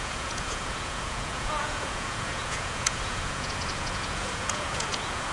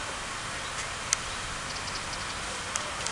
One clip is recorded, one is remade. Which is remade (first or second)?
first